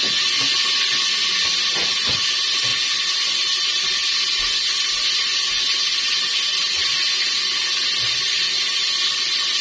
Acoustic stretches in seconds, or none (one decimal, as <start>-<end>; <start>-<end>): 0.0-9.6